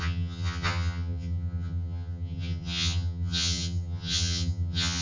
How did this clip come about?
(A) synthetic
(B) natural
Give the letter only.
A